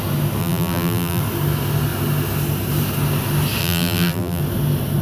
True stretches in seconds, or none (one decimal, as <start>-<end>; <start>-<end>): 0.0-0.4; 1.2-3.6; 4.4-5.0